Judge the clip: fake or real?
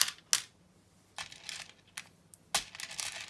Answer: real